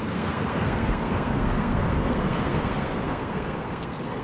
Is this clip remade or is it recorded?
remade